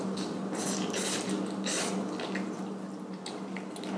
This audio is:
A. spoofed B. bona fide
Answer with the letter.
B